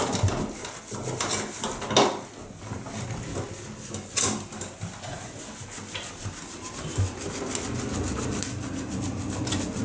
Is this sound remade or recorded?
recorded